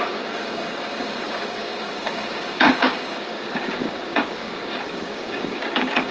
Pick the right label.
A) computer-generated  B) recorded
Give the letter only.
A